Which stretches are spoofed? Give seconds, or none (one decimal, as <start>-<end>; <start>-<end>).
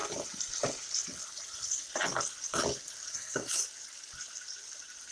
3.1-3.6